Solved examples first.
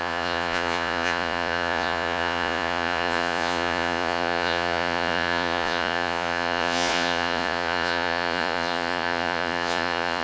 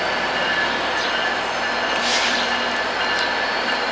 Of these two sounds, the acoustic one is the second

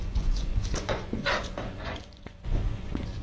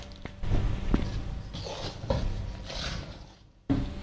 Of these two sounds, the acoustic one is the second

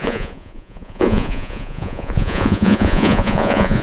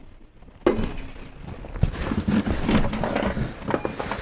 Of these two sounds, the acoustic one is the second